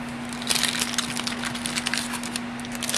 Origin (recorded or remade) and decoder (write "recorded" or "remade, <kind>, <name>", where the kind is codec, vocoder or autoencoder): recorded